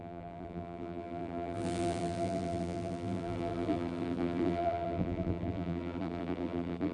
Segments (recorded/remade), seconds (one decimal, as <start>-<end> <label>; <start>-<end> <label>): 0.0-6.9 remade